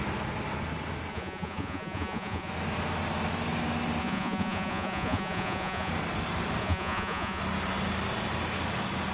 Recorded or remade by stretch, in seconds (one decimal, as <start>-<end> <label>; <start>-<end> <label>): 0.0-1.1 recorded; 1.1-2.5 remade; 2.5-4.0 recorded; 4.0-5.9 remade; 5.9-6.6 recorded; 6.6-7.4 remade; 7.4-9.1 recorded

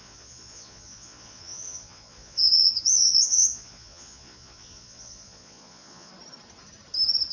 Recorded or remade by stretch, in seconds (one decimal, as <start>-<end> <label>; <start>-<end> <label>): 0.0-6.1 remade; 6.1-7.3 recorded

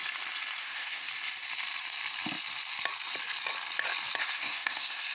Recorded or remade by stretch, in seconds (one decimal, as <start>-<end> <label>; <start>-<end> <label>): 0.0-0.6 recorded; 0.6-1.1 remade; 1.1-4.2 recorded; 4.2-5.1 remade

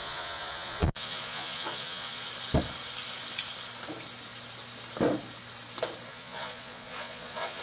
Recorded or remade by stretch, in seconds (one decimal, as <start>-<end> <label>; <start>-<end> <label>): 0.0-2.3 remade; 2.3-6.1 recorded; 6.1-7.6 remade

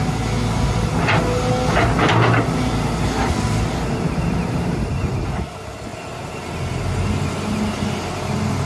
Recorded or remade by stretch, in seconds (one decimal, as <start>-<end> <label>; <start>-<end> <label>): 0.0-8.7 recorded

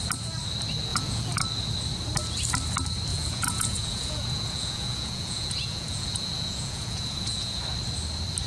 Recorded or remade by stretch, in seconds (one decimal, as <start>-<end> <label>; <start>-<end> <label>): 0.0-0.9 recorded; 0.9-1.4 remade; 1.4-3.1 recorded; 3.1-7.6 remade; 7.6-8.5 recorded

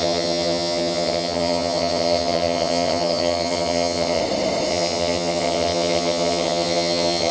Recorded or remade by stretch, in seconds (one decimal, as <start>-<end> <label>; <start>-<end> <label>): 0.0-4.2 remade; 4.2-4.7 recorded; 4.7-7.3 remade